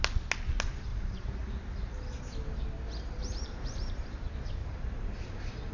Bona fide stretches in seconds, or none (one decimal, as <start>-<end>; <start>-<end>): 0.0-0.9; 2.2-3.2; 4.1-4.6